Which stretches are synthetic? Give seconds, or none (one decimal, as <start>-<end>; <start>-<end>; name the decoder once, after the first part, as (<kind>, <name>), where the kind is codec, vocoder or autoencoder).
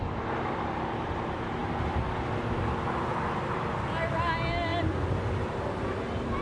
none